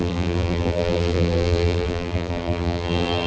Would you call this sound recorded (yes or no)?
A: no